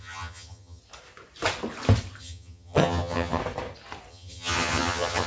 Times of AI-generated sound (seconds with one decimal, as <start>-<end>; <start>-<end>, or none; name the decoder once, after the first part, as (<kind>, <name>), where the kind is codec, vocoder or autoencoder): 0.0-0.8 (vocoder, HiFi-GAN); 2.2-3.4; 4.1-5.3